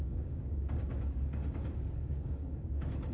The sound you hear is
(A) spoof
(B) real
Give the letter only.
A